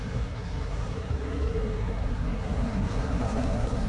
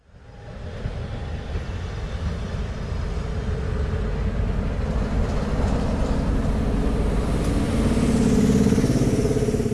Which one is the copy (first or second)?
first